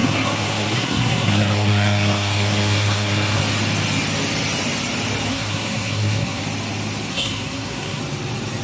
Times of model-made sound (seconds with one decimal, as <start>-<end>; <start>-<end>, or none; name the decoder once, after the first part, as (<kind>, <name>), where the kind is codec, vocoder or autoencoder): 0.0-3.4 (codec, SNAC); 5.3-6.4; 7.1-8.0

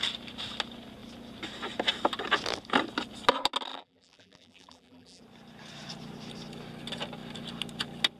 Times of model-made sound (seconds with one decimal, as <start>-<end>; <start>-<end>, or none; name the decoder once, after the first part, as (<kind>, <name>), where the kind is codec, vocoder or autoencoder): 3.7-5.2 (vocoder, BigVGAN v2)

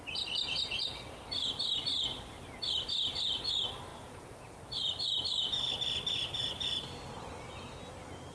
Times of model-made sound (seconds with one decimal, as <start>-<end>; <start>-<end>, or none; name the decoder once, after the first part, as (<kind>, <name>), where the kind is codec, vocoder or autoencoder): 3.9-4.6 (vocoder, Vocos)

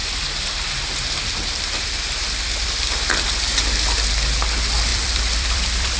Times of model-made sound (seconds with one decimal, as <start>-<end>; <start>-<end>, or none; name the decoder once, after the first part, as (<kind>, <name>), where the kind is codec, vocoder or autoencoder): 4.9-6.0 (vocoder, BigVGAN v2)

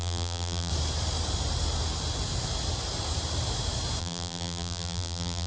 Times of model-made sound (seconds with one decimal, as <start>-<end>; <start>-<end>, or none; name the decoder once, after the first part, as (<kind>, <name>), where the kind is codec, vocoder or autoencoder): 0.0-0.7 (vocoder, BigVGAN v2); 4.0-5.5